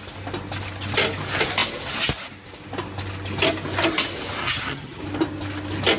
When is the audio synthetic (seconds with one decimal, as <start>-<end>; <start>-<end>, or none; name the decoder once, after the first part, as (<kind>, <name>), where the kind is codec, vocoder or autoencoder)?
4.4-5.0 (vocoder, HiFi-GAN)